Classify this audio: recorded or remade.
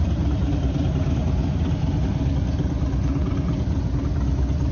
recorded